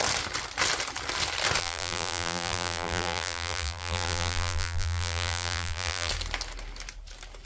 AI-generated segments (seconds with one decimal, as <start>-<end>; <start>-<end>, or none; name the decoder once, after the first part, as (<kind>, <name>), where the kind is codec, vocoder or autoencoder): 1.6-6.1 (vocoder, BigVGAN v2)

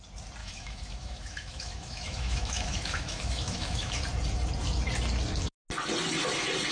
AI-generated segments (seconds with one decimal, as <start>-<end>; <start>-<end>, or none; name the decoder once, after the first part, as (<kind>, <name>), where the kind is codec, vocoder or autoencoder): 0.4-4.0 (autoencoder, DAC-VAE)

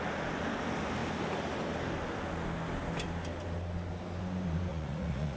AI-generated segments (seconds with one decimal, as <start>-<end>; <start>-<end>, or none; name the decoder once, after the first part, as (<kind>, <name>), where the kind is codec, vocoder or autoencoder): 4.7-5.4 (vocoder, Vocos)

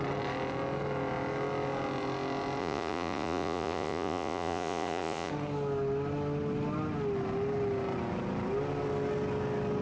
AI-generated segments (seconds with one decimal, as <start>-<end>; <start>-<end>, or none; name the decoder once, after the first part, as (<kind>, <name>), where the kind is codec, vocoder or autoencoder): 2.6-5.3 (vocoder, Vocos)